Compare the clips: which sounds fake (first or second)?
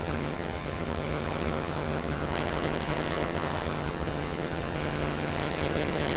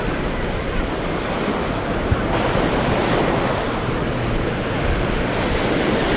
first